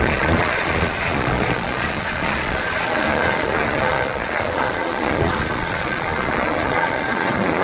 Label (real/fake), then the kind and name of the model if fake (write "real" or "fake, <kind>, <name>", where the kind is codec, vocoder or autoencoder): fake, vocoder, Vocos